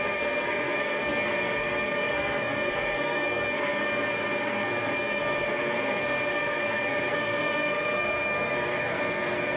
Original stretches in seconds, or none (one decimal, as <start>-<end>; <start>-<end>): none